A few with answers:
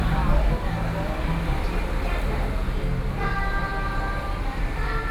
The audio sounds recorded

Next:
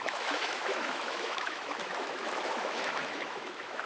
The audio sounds remade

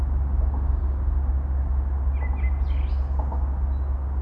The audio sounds recorded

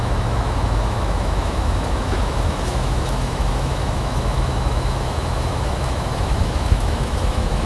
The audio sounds remade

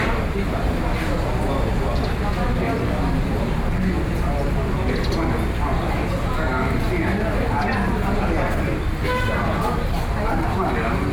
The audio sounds recorded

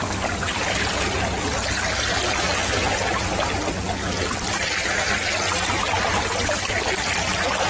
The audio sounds recorded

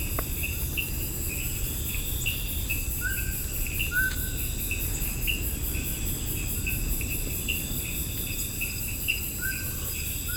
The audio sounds recorded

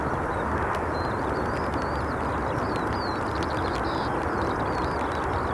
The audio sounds recorded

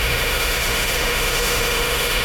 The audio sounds remade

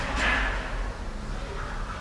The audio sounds recorded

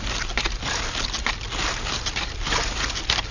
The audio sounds recorded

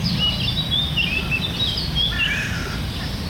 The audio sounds recorded